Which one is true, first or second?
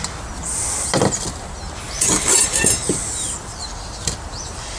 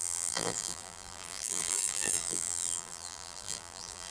first